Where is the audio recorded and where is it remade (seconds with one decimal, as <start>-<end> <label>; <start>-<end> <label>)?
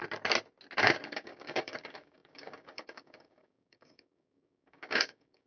0.0-0.8 recorded; 0.8-5.5 remade